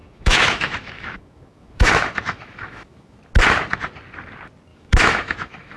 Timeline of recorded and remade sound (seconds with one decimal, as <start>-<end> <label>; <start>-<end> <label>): 0.0-3.2 remade; 3.2-4.7 recorded; 4.7-5.8 remade